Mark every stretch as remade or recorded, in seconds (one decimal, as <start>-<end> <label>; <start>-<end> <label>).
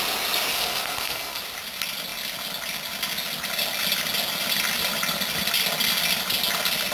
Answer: 0.0-0.5 recorded; 0.5-1.4 remade; 1.4-6.9 recorded